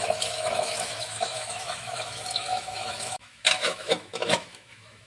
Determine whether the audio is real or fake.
fake